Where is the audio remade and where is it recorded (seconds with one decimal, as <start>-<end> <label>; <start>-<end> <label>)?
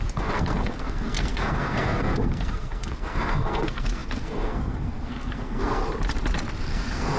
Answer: 0.0-5.8 remade; 5.8-6.6 recorded; 6.6-7.2 remade